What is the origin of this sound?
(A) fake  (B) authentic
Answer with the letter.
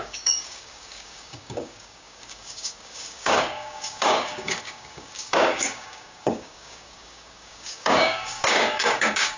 A